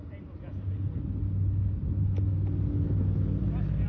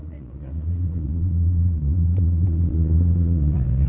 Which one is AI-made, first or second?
second